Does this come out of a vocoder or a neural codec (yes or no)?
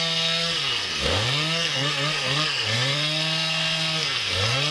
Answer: yes